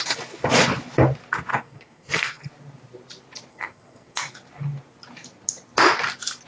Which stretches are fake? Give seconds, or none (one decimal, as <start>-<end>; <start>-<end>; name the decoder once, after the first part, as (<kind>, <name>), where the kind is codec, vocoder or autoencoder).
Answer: 1.5-2.5 (codec, SNAC); 3.5-4.4